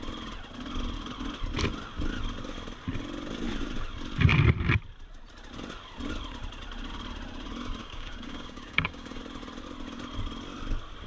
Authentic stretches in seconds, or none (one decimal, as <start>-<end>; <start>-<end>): 0.0-7.8; 9.2-11.1